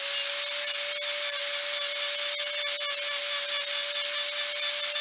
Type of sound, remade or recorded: recorded